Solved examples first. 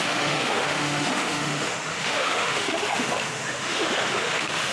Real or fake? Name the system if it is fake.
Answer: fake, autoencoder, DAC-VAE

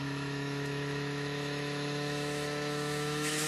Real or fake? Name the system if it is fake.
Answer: fake, autoencoder, DAC-VAE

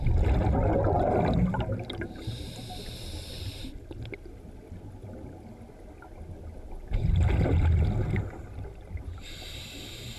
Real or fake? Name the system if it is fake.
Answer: real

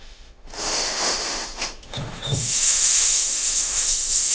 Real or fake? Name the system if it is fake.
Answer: fake, autoencoder, DAC-VAE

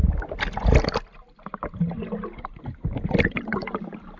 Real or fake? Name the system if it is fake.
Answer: real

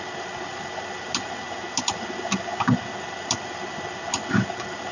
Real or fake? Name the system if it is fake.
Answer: real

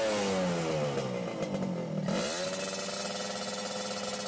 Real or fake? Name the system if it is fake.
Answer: real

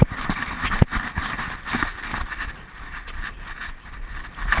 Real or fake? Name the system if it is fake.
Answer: real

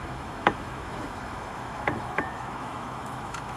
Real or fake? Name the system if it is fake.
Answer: fake, autoencoder, DAC-VAE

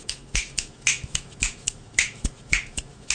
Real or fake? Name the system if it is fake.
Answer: fake, autoencoder, DAC-VAE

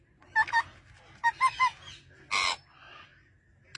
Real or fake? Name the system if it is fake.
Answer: real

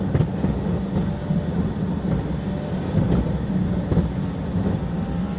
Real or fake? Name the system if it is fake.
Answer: real